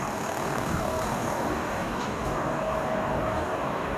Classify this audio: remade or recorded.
remade